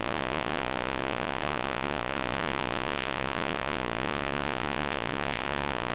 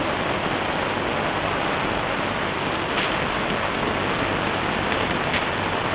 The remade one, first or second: first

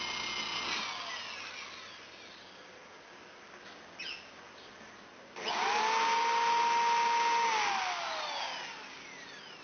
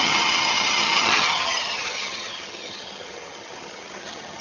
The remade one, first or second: second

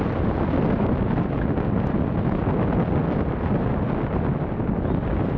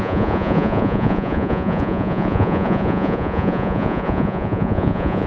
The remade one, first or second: second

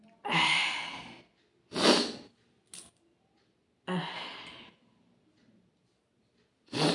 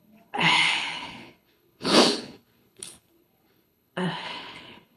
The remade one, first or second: second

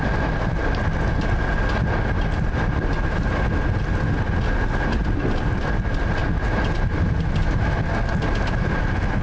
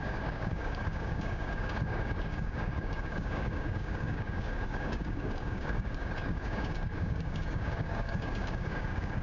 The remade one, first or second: second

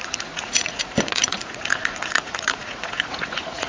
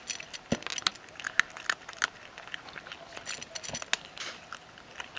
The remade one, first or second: first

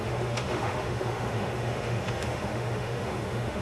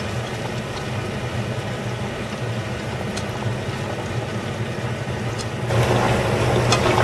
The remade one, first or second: first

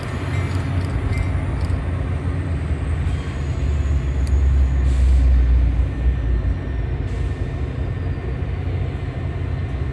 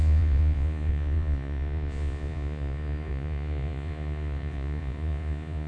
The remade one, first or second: second